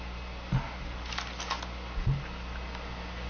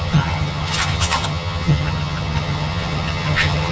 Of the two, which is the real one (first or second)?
first